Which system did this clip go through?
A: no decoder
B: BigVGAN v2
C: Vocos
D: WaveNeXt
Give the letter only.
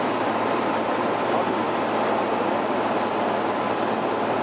A